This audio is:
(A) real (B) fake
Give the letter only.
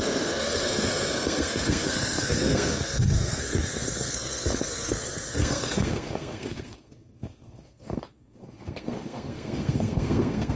B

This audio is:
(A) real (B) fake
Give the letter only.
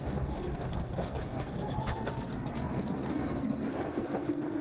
B